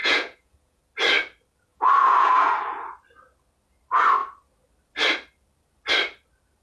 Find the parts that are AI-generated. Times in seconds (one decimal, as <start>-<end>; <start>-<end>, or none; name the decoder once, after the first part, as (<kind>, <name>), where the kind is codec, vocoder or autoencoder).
0.0-0.8 (vocoder, Vocos); 1.7-2.5